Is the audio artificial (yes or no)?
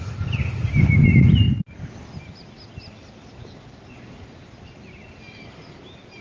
no